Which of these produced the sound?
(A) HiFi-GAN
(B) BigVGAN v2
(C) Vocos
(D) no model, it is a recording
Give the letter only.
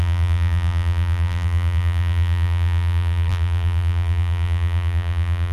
B